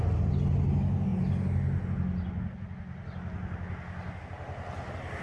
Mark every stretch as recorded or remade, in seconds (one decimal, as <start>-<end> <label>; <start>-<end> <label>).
0.0-5.2 recorded